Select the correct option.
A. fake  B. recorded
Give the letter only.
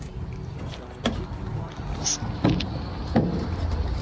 B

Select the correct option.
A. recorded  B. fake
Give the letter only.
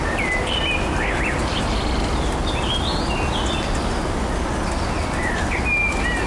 A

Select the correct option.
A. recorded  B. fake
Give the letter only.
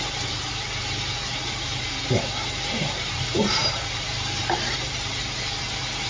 B